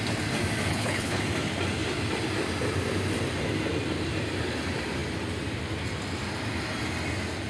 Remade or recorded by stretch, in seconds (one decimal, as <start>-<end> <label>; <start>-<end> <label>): 0.0-0.7 recorded; 0.7-1.2 remade; 1.2-7.5 recorded